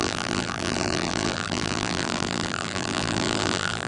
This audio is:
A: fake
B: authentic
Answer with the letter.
A